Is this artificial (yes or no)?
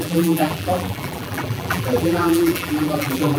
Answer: yes